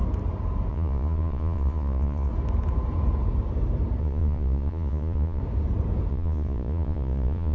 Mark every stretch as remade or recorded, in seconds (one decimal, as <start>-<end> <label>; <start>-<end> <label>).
0.0-0.7 recorded; 0.7-2.3 remade; 2.3-4.0 recorded; 4.0-5.4 remade; 5.4-6.1 recorded; 6.1-7.5 remade